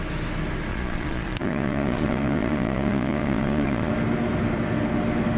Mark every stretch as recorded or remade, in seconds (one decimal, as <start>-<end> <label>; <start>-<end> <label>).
0.0-0.7 recorded; 0.7-3.9 remade; 3.9-5.4 recorded